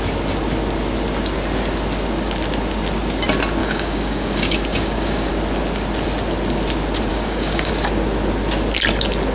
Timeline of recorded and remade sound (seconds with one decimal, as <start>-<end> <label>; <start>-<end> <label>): 0.0-3.6 recorded; 3.6-5.3 remade; 5.3-7.1 recorded; 7.1-7.7 remade; 7.7-9.3 recorded